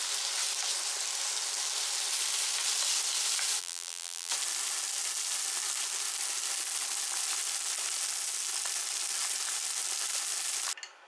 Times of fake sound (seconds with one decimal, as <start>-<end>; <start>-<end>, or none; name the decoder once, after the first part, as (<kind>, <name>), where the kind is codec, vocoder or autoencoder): 3.6-4.3 (vocoder, BigVGAN v2)